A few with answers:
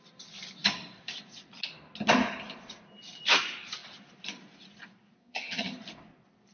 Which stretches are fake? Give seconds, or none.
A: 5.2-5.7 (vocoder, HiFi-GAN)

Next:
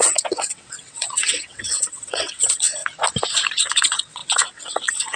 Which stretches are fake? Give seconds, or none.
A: 0.0-2.8 (vocoder, WaveNeXt); 3.6-5.2

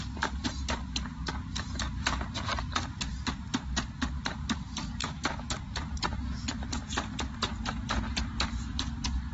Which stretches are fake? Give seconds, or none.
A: 5.0-5.6 (autoencoder, DAC-VAE)